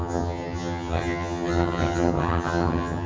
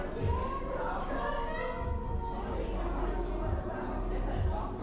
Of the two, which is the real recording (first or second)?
second